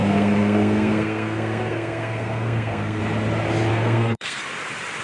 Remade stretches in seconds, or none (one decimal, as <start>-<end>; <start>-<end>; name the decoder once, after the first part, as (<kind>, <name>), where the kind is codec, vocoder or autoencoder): 0.0-3.0 (codec, SNAC); 3.7-4.4